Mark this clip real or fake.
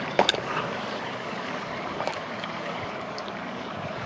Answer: fake